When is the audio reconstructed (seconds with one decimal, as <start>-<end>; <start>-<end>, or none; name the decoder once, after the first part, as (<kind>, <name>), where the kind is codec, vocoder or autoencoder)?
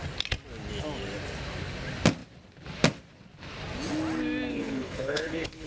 4.5-5.7 (codec, HILCodec)